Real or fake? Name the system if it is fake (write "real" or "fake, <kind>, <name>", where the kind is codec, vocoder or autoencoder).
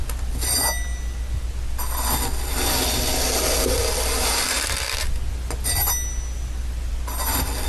real